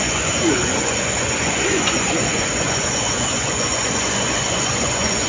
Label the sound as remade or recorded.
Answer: remade